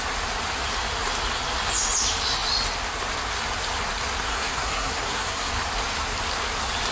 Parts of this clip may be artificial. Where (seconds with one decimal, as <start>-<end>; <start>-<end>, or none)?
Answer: 4.3-5.5